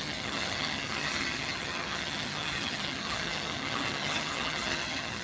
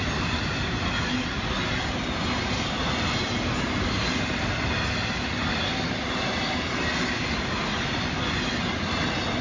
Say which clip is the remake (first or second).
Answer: first